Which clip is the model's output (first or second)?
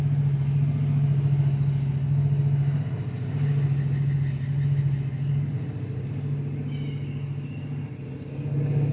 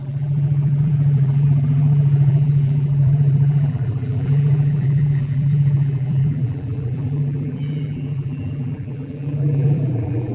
second